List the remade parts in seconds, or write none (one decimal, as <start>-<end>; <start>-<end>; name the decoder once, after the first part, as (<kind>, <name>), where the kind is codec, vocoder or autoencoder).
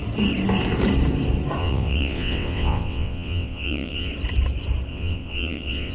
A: 1.6-4.1 (vocoder, WaveNeXt); 4.9-5.9